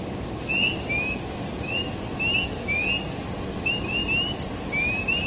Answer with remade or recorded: recorded